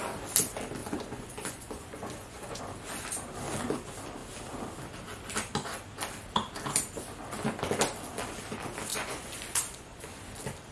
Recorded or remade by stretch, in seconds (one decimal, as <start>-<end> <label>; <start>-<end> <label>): 0.0-0.8 recorded; 0.8-2.6 remade; 2.6-8.9 recorded; 8.9-10.2 remade; 10.2-10.7 recorded